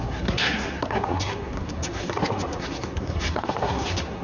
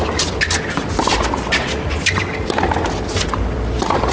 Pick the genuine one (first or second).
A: second